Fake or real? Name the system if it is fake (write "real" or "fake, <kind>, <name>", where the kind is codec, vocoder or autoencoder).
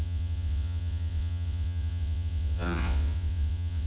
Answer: fake, vocoder, WaveNeXt